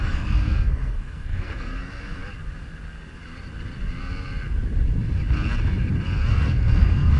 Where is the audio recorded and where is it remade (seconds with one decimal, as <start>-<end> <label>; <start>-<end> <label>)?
0.0-2.2 remade; 2.2-6.3 recorded; 6.3-7.2 remade